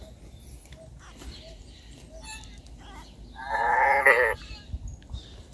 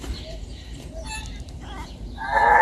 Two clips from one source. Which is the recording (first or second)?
first